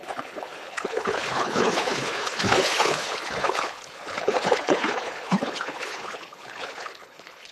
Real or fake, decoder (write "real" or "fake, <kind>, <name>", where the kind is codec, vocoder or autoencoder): fake, codec, HILCodec